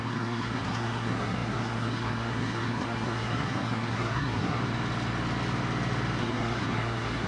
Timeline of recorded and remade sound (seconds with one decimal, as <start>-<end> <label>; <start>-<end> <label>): 0.0-4.6 remade; 4.6-6.2 recorded; 6.2-7.3 remade